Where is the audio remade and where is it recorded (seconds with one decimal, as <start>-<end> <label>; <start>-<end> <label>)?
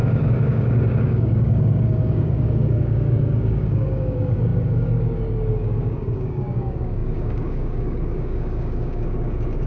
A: 0.0-9.7 remade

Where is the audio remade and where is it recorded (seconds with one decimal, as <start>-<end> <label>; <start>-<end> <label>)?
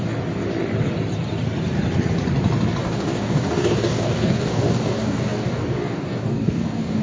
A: 0.0-2.8 recorded; 2.8-7.0 remade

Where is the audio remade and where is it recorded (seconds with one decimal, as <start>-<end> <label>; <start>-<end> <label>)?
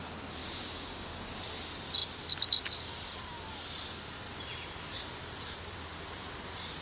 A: 0.0-0.4 recorded; 0.4-1.4 remade; 1.4-6.8 recorded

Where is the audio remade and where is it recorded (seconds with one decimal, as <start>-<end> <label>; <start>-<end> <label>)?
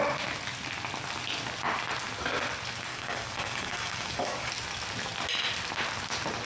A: 0.0-2.9 recorded; 2.9-4.5 remade; 4.5-6.4 recorded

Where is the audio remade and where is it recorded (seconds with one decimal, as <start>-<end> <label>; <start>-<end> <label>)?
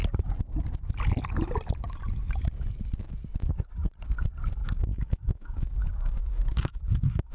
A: 0.0-4.6 recorded; 4.6-7.3 remade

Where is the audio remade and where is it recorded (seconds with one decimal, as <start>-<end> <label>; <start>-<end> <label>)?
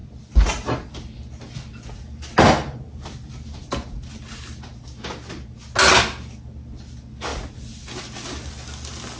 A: 0.0-9.2 recorded